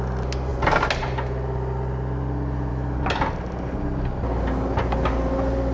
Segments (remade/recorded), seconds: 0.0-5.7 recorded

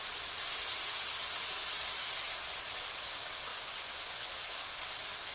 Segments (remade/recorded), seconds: 0.0-3.5 recorded; 3.5-4.3 remade; 4.3-5.3 recorded

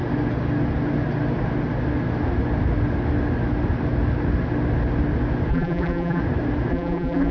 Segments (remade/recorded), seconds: 0.0-5.5 recorded; 5.5-6.2 remade; 6.2-6.7 recorded; 6.7-7.3 remade

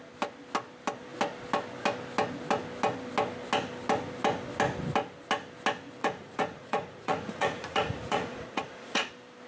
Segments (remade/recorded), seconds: 0.0-6.0 recorded; 6.0-9.1 remade; 9.1-9.5 recorded

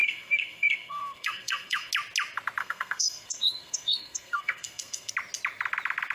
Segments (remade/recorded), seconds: 0.0-1.9 remade; 1.9-2.6 recorded; 2.6-5.1 remade; 5.1-6.1 recorded

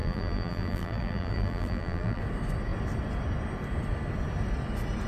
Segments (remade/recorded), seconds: 0.0-2.2 remade; 2.2-5.1 recorded

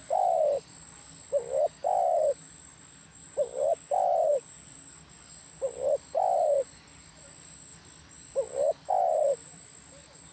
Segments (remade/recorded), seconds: 0.0-7.7 remade; 7.7-8.9 recorded; 8.9-10.3 remade